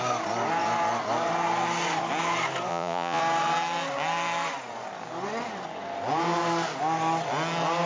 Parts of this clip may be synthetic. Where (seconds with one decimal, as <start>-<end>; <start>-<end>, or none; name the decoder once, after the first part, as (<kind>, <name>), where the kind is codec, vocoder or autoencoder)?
2.7-3.2 (vocoder, Vocos)